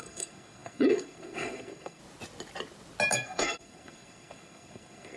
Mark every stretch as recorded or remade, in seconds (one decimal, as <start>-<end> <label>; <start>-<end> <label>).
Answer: 0.0-2.0 remade; 2.0-3.1 recorded; 3.1-5.2 remade